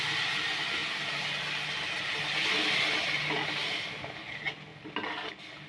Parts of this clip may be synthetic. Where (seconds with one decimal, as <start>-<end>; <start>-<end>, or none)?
none